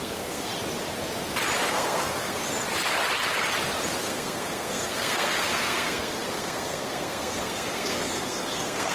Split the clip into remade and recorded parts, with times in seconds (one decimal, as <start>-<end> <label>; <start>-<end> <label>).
0.0-0.5 remade; 0.5-1.7 recorded; 1.7-2.4 remade; 2.4-4.0 recorded; 4.0-8.9 remade